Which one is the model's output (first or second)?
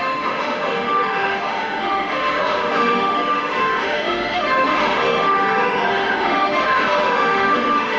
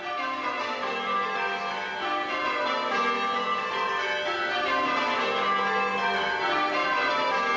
first